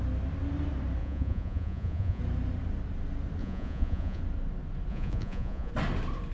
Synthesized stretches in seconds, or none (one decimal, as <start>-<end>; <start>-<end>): 1.0-2.2; 3.4-4.2; 4.9-5.7